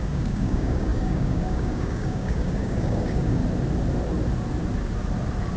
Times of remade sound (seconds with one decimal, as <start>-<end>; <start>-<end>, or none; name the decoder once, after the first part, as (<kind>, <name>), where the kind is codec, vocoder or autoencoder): 0.0-3.4 (codec, DAC)